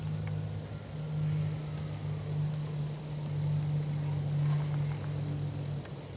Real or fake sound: real